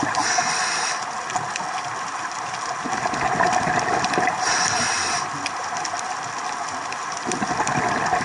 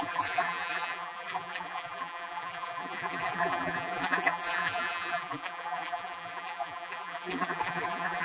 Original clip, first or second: first